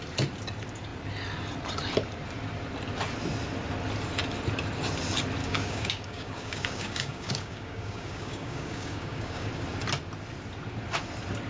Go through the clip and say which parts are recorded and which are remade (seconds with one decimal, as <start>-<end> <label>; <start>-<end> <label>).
0.0-5.4 recorded; 5.4-9.5 remade; 9.5-11.5 recorded

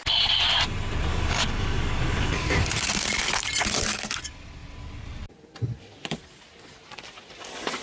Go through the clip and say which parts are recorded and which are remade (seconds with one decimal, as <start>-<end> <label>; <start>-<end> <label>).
0.0-1.1 recorded; 1.1-2.6 remade; 2.6-7.8 recorded